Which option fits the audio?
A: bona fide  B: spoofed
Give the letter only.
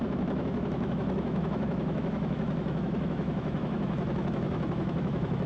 B